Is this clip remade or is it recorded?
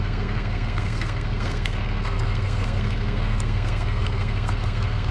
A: remade